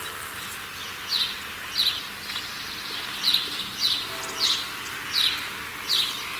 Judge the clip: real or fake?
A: real